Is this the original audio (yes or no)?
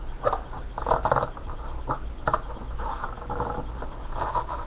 yes